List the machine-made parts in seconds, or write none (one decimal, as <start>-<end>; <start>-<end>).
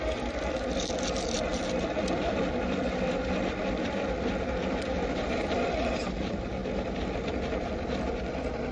0.0-6.6; 7.7-8.7